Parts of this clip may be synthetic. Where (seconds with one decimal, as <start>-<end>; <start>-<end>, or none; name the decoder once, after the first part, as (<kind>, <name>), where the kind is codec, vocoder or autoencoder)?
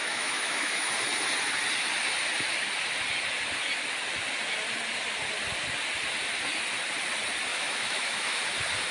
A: 0.0-0.9 (autoencoder, DAC-VAE); 7.5-8.4